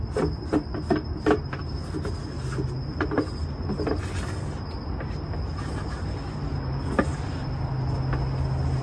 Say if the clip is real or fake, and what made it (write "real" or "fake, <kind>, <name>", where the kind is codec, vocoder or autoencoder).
real